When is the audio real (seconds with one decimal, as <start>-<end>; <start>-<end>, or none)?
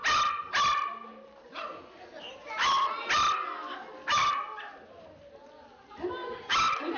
none